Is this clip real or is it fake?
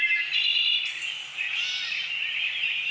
real